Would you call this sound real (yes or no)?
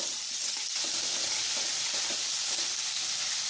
yes